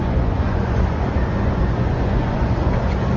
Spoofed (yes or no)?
yes